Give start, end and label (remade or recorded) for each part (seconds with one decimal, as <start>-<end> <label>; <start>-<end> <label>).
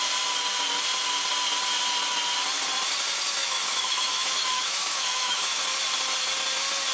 0.0-3.4 recorded; 3.4-5.6 remade; 5.6-6.9 recorded